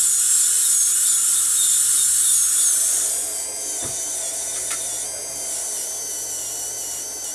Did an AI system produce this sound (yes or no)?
no